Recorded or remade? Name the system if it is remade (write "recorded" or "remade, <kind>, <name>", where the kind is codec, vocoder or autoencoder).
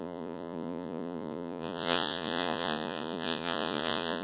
remade, vocoder, Vocos